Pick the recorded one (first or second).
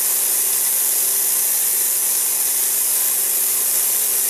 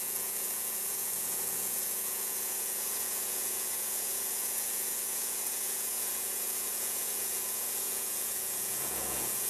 first